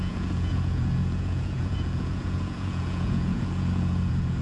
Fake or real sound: fake